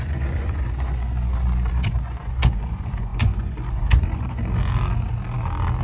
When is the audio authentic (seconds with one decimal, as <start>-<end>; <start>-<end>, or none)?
1.1-1.7; 4.4-5.8